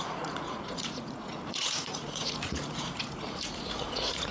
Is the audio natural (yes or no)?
no